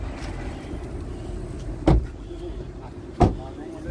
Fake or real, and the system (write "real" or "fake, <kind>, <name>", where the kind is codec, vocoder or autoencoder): real